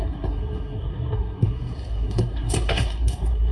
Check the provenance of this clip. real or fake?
fake